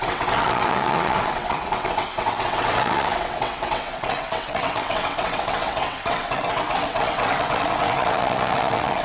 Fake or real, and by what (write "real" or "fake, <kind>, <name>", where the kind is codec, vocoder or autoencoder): fake, vocoder, WaveNeXt